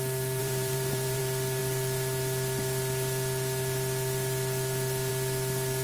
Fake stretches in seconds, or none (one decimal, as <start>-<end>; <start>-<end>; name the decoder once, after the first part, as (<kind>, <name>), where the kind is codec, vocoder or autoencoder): 0.4-1.2 (vocoder, BigVGAN v2)